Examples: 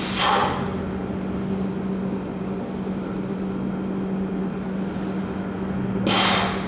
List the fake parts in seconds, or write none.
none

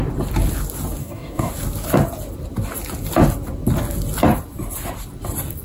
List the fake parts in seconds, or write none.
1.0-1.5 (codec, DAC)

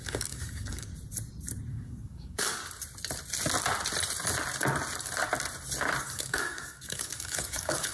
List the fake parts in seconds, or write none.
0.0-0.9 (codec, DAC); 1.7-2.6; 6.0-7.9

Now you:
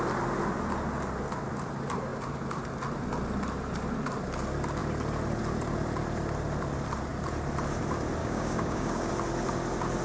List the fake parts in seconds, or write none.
8.2-9.1 (codec, DAC)

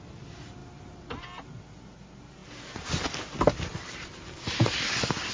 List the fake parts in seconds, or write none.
none